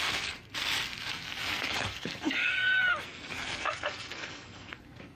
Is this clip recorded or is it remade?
remade